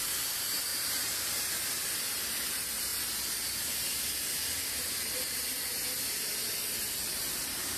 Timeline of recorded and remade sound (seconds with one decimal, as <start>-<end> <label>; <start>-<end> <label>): 0.0-0.7 recorded; 0.7-1.5 remade; 1.5-4.8 recorded; 4.8-5.7 remade; 5.7-7.8 recorded